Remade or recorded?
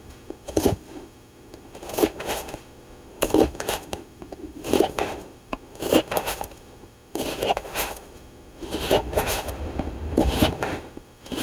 remade